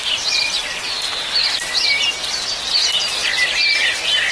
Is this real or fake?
real